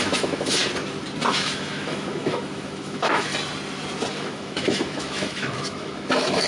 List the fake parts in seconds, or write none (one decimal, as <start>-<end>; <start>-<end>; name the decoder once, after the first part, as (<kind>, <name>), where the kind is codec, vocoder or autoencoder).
0.0-0.6 (autoencoder, DAC-VAE); 1.3-3.3; 4.1-6.5